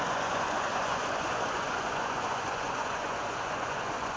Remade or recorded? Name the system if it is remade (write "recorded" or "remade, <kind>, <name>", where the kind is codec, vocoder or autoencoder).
remade, vocoder, Vocos